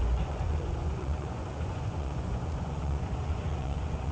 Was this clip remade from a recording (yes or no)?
yes